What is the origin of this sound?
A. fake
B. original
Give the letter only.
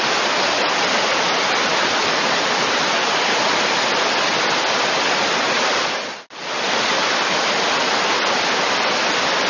B